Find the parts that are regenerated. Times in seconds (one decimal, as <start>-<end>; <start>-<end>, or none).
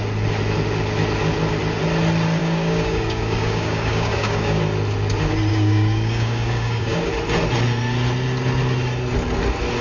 2.4-4.6; 5.5-7.1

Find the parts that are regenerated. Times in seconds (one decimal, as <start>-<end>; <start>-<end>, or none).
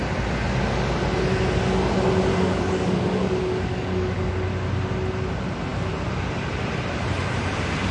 2.3-4.3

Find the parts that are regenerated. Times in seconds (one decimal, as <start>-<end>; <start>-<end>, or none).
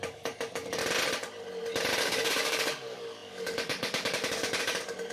0.0-0.8; 2.0-5.1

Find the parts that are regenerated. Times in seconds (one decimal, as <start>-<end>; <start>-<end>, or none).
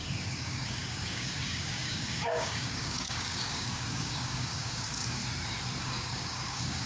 0.0-5.2; 5.8-6.9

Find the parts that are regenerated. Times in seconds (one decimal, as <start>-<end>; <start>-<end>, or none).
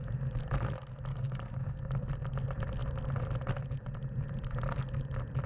1.1-2.1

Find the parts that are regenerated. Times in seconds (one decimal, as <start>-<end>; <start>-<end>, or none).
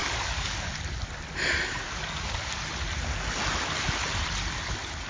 0.0-0.7; 1.8-2.5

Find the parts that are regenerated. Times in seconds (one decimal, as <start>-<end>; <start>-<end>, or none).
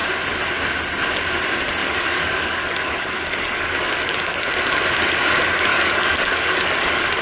1.8-4.4; 5.7-7.2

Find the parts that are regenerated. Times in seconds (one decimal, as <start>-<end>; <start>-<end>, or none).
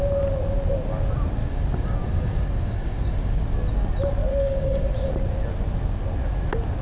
1.4-3.4; 4.3-5.1